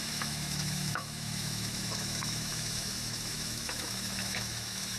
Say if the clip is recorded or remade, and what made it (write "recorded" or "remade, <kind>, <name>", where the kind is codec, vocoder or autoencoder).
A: remade, autoencoder, DAC-VAE